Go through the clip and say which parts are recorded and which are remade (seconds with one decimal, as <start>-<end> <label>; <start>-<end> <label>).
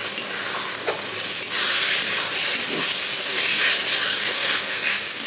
0.0-3.1 recorded; 3.1-3.6 remade; 3.6-4.1 recorded; 4.1-5.3 remade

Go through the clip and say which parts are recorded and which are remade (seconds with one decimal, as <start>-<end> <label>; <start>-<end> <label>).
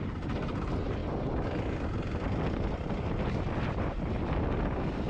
0.0-5.1 recorded